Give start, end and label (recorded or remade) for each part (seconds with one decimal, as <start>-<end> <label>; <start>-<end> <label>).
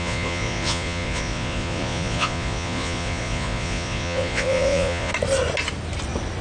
0.0-5.1 remade; 5.1-6.4 recorded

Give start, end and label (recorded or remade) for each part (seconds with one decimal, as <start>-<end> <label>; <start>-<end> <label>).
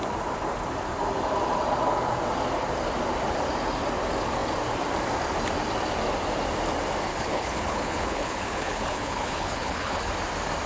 0.0-7.1 recorded; 7.1-10.1 remade; 10.1-10.7 recorded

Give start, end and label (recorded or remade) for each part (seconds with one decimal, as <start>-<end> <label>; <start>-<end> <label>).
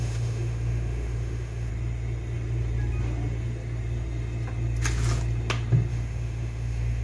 0.0-1.7 remade; 1.7-5.9 recorded; 5.9-7.0 remade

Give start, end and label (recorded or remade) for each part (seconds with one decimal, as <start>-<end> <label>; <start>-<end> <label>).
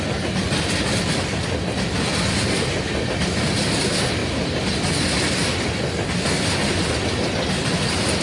0.0-8.2 recorded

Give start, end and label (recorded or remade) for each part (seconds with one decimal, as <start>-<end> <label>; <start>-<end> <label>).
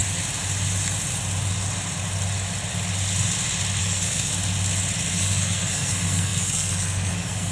0.0-3.8 recorded; 3.8-4.3 remade; 4.3-5.1 recorded; 5.1-7.5 remade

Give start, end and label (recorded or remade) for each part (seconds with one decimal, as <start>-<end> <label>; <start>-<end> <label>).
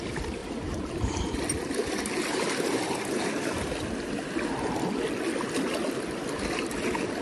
0.0-0.4 recorded; 0.4-1.2 remade; 1.2-7.2 recorded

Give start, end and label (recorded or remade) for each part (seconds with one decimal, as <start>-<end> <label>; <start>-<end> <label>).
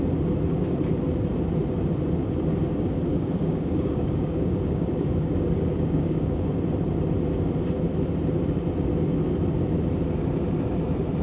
0.0-3.1 recorded; 3.1-6.5 remade; 6.5-11.2 recorded